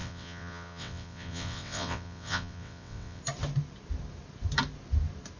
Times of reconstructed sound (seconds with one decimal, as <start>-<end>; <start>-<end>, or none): 0.0-3.2